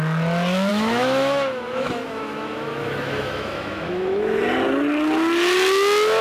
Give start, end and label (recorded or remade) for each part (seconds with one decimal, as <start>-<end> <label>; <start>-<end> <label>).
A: 0.0-0.7 recorded; 0.7-4.4 remade; 4.4-6.2 recorded